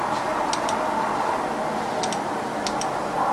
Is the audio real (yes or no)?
yes